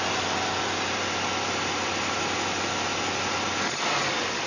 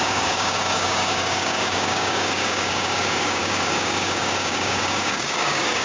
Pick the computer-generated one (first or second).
second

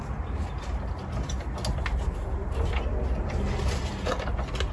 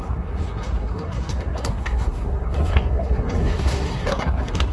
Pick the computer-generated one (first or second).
second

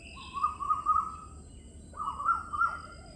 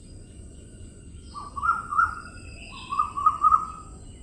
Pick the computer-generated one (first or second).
second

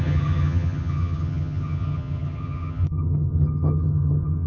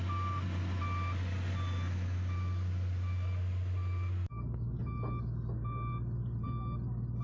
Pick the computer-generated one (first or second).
first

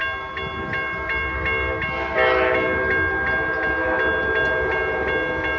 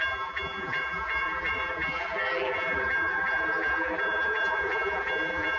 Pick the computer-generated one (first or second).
second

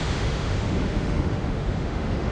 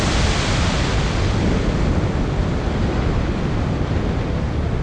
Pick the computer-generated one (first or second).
first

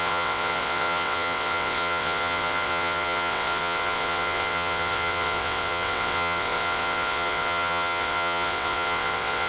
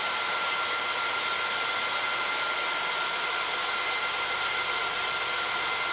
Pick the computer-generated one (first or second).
first